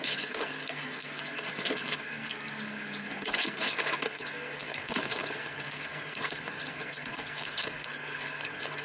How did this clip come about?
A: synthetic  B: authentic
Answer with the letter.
A